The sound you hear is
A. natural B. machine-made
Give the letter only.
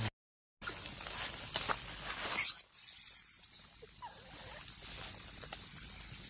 A